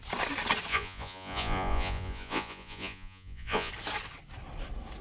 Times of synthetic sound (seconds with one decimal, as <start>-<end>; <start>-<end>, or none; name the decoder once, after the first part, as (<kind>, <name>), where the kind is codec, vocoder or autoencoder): 0.7-3.7 (vocoder, Vocos)